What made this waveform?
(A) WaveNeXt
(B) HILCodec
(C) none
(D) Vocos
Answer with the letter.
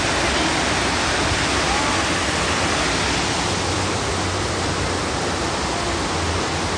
C